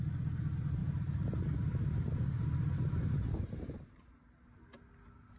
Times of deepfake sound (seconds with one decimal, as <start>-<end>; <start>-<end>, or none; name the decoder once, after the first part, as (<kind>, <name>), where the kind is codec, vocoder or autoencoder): 0.8-4.0 (vocoder, BigVGAN v2)